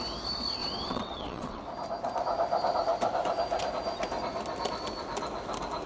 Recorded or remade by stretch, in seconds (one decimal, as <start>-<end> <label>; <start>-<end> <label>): 0.0-0.6 recorded; 0.6-1.6 remade; 1.6-5.9 recorded